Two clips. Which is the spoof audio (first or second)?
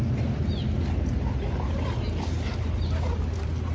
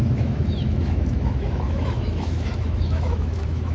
second